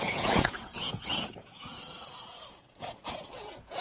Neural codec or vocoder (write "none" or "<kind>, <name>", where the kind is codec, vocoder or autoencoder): vocoder, Vocos